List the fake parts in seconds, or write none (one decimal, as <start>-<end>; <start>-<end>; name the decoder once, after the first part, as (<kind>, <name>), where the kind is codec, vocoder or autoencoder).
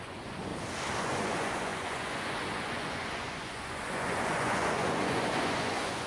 0.0-0.5 (vocoder, Vocos); 1.0-6.1